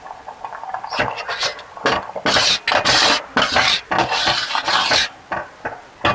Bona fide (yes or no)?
yes